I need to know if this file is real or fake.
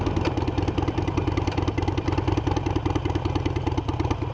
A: real